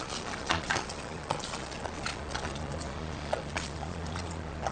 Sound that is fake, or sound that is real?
fake